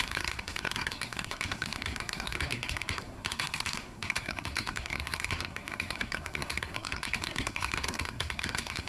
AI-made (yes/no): yes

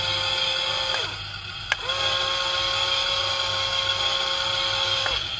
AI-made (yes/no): no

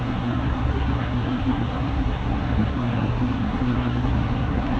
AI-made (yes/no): yes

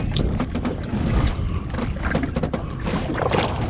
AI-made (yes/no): no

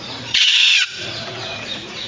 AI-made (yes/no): yes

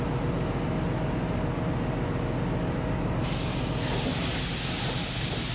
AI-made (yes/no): no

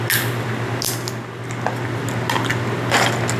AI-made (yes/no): no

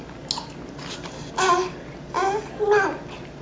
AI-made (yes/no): no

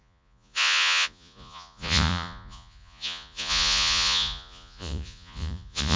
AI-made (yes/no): yes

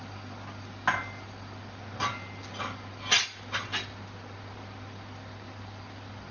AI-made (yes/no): no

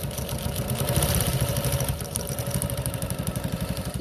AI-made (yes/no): yes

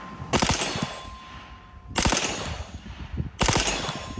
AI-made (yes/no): no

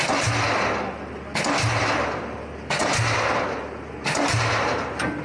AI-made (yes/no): no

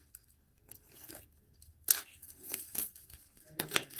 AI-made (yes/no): yes